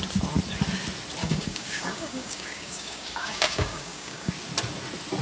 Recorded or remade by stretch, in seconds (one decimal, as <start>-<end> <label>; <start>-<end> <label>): 0.0-1.2 recorded; 1.2-4.3 remade; 4.3-5.2 recorded